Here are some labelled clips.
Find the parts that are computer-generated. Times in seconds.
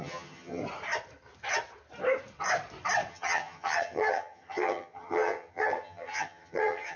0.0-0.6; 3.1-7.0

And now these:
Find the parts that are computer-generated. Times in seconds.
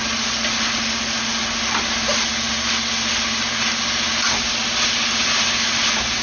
none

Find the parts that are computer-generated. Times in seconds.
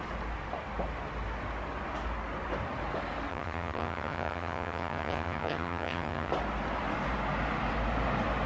3.3-6.3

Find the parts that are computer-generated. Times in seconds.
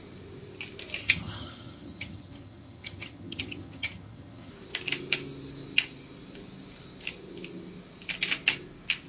1.0-4.5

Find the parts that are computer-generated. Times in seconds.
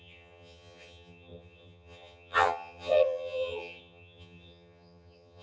0.0-5.4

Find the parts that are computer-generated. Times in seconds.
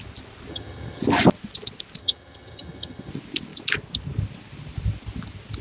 0.5-1.0; 2.0-3.1